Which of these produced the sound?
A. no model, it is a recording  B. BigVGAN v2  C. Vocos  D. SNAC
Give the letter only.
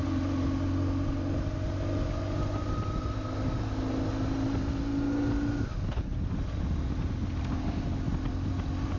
A